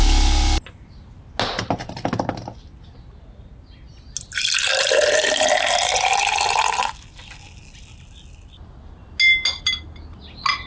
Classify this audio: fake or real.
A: real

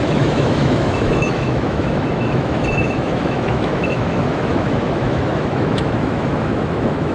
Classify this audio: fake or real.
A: fake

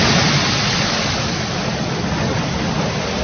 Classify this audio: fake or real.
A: real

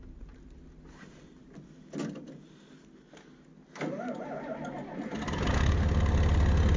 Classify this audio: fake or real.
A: real